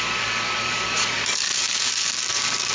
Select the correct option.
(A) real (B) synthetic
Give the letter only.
B